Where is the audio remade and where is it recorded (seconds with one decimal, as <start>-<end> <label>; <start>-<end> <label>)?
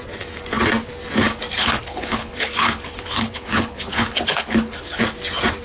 0.0-1.6 recorded; 1.6-5.0 remade; 5.0-5.6 recorded